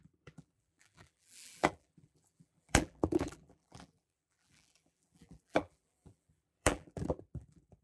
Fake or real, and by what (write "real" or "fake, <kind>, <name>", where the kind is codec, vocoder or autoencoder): fake, vocoder, BigVGAN v2